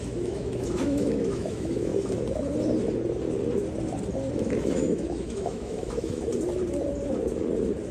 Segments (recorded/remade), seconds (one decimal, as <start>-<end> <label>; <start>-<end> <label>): 0.0-1.9 remade; 1.9-4.3 recorded; 4.3-6.3 remade; 6.3-7.9 recorded